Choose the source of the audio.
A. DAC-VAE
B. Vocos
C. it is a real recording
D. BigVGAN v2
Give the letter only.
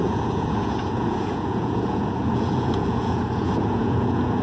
B